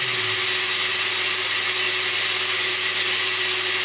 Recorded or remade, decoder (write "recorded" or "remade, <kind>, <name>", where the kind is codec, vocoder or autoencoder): recorded